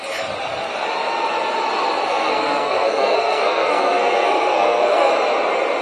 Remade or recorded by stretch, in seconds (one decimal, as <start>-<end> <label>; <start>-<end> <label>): 0.0-2.1 recorded; 2.1-5.1 remade; 5.1-5.8 recorded